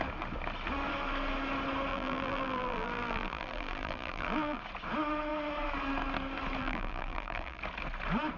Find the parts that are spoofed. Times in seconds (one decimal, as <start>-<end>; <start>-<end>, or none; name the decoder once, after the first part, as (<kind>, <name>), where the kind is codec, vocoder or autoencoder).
1.9-4.6 (vocoder, BigVGAN v2); 6.6-7.6